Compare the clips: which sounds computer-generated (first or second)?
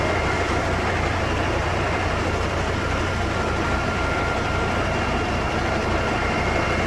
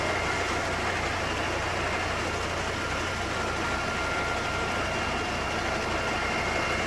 first